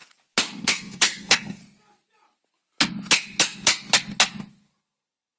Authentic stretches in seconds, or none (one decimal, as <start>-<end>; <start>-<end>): 0.0-0.6; 1.6-4.8